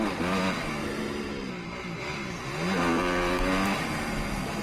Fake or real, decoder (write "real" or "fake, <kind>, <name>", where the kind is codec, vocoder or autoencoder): real